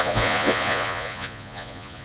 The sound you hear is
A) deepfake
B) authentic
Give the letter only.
A